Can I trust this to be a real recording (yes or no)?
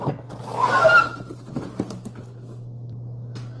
yes